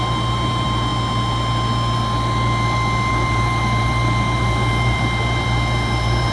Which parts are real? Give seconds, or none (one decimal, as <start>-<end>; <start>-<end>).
0.9-3.1